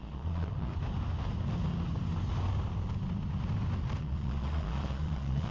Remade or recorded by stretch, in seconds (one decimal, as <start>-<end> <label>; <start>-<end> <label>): 0.0-0.7 remade; 0.7-4.0 recorded; 4.0-5.5 remade